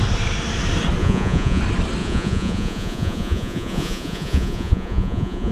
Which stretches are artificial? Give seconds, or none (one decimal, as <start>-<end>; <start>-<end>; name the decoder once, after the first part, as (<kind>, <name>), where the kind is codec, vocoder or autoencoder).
1.0-1.6 (vocoder, Vocos); 2.0-5.5